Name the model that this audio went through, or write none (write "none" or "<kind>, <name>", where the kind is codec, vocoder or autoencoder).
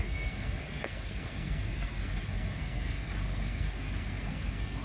codec, SNAC